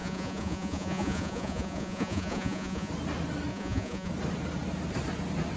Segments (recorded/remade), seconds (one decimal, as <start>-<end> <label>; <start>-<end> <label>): 0.0-2.9 remade; 2.9-3.5 recorded; 3.5-4.1 remade; 4.1-5.6 recorded

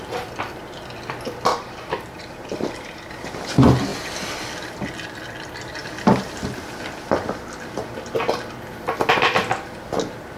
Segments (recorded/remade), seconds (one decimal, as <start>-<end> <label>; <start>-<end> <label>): 0.0-1.5 recorded; 1.5-3.1 remade; 3.1-10.4 recorded

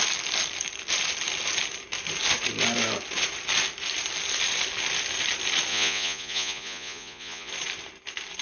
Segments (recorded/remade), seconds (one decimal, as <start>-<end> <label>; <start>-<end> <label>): 0.0-5.7 recorded; 5.7-7.5 remade; 7.5-8.4 recorded

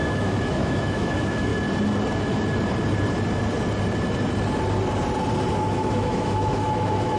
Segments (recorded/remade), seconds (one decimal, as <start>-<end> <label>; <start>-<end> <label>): 0.0-1.5 remade; 1.5-5.5 recorded; 5.5-7.2 remade

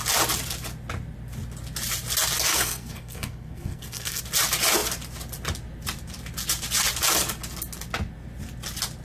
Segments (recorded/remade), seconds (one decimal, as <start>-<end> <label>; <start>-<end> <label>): 0.0-2.5 recorded; 2.5-4.2 remade; 4.2-9.0 recorded